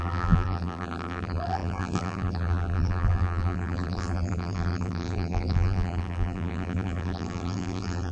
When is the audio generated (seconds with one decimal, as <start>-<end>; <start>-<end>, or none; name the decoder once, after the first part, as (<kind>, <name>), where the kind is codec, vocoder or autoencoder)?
0.0-8.1 (vocoder, BigVGAN v2)